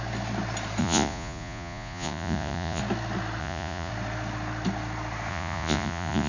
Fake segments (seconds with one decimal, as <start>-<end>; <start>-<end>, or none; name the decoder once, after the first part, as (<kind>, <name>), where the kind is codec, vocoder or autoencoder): 0.8-2.8 (vocoder, Vocos); 3.4-3.9; 5.3-6.3